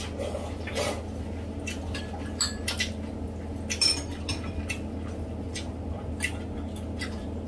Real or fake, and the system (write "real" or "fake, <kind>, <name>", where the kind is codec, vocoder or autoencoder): real